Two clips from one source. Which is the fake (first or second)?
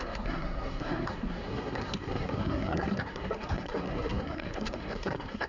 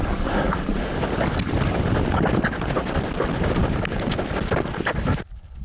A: first